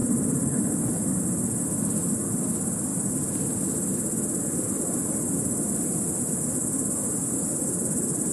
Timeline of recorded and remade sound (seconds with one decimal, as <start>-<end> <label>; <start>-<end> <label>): 0.0-1.6 remade; 1.6-7.0 recorded; 7.0-8.3 remade

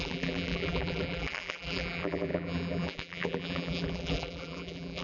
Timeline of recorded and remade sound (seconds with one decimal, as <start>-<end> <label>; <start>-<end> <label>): 0.0-5.0 remade

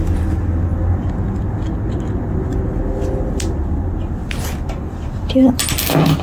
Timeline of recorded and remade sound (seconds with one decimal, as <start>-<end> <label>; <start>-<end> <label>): 0.0-4.2 recorded; 4.2-5.5 remade; 5.5-6.2 recorded

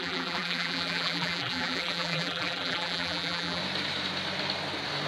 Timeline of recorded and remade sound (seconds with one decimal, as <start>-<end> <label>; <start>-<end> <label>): 0.0-3.6 remade; 3.6-5.1 recorded

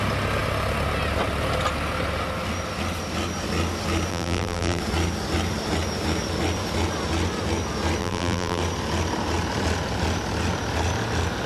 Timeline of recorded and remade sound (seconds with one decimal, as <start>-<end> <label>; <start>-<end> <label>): 0.0-4.1 recorded; 4.1-4.8 remade; 4.8-8.0 recorded; 8.0-8.6 remade; 8.6-11.5 recorded

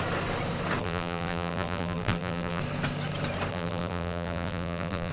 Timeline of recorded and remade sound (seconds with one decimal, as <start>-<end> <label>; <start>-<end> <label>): 0.0-0.8 recorded; 0.8-2.6 remade; 2.6-3.5 recorded; 3.5-5.1 remade

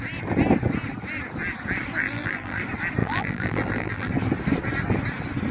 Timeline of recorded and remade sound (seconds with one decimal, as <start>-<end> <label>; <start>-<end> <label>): 0.0-2.0 recorded; 2.0-2.6 remade; 2.6-3.0 recorded; 3.0-4.1 remade; 4.1-5.5 recorded